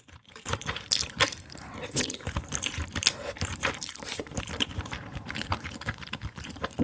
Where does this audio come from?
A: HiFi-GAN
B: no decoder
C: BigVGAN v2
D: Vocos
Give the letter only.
C